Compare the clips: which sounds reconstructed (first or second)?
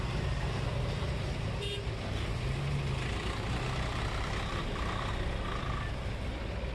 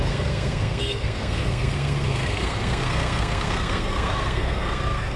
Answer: second